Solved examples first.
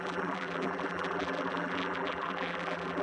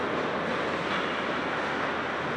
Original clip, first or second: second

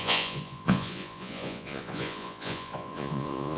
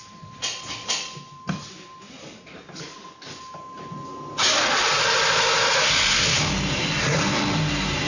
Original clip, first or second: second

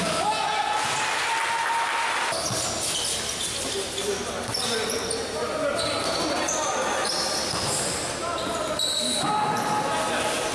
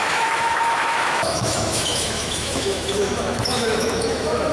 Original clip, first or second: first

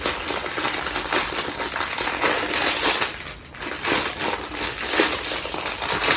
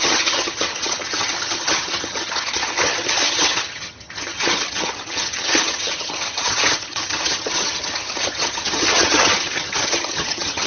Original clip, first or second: first